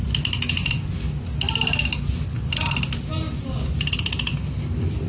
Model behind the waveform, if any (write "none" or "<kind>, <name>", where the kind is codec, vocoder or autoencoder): none